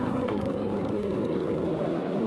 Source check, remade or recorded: remade